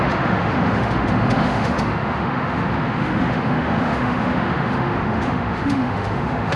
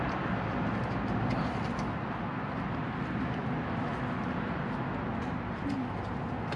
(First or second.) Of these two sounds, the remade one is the first